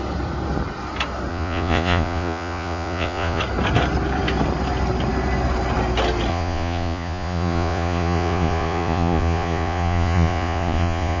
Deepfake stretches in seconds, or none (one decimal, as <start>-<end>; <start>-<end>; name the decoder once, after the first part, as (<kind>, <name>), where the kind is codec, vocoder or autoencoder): 1.3-3.4 (vocoder, Vocos); 6.3-11.2